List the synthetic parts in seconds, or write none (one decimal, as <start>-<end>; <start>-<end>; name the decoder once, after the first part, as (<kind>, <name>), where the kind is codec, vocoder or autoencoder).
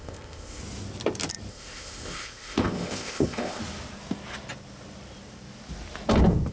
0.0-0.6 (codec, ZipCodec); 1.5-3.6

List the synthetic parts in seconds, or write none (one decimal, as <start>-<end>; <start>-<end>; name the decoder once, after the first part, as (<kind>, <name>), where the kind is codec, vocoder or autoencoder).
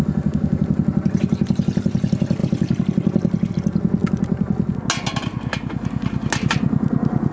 2.4-3.5 (vocoder, BigVGAN v2)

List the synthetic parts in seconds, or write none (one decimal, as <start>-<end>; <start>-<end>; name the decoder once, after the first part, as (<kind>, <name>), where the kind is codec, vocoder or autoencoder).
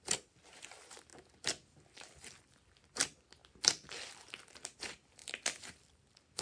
none